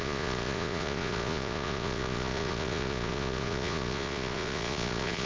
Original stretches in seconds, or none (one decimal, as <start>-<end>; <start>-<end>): none